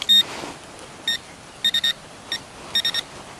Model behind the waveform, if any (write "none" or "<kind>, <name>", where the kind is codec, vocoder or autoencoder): none